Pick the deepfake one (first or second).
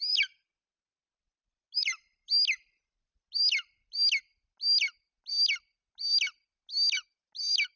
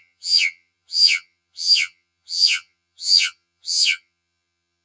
second